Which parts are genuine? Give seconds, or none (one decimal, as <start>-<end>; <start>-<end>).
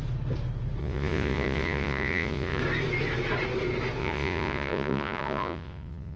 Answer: 0.0-0.8; 2.6-4.0